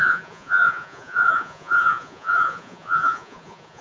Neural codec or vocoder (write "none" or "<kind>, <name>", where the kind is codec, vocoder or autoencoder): vocoder, Vocos